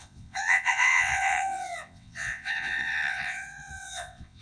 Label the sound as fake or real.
fake